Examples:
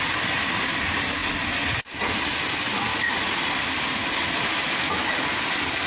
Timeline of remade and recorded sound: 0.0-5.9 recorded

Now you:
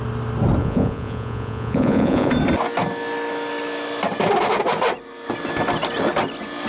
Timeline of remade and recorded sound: 0.0-0.6 recorded; 0.6-2.3 remade; 2.3-6.7 recorded

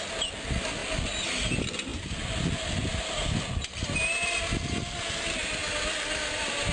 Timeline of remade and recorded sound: 0.0-6.7 recorded

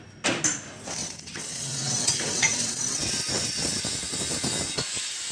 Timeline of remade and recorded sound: 0.0-1.0 recorded; 1.0-3.8 remade; 3.8-5.3 recorded

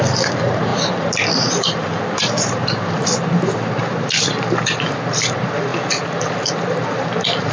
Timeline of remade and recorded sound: 0.0-5.7 remade; 5.7-6.5 recorded; 6.5-7.5 remade

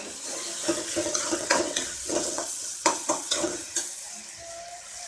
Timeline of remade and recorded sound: 0.0-1.0 recorded; 1.0-4.1 remade; 4.1-5.1 recorded